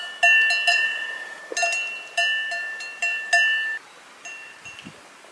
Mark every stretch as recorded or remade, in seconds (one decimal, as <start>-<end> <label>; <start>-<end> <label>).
0.0-0.7 recorded; 0.7-1.4 remade; 1.4-5.3 recorded